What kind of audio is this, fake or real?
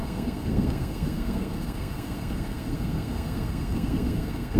fake